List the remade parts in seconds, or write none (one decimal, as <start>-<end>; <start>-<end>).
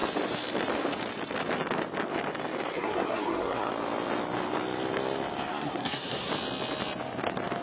2.7-3.7; 5.5-6.3